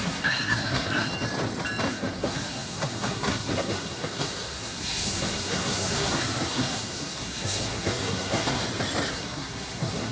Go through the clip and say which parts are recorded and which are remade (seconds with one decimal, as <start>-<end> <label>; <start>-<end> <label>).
0.0-1.1 remade; 1.1-1.9 recorded; 1.9-8.6 remade; 8.6-9.1 recorded; 9.1-10.1 remade